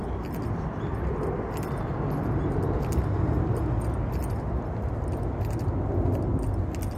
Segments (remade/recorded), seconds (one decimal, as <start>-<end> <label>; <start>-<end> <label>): 0.0-7.0 recorded